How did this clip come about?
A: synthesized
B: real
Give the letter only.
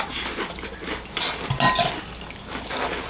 B